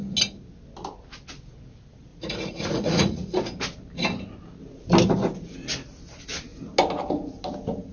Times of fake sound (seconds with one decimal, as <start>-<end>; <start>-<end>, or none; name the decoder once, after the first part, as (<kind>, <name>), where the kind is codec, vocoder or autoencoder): 2.1-3.4 (vocoder, Vocos)